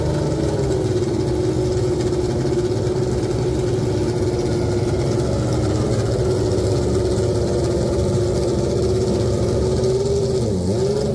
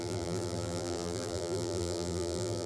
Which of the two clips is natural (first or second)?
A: first